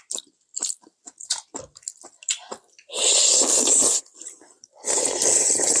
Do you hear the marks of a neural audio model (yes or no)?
yes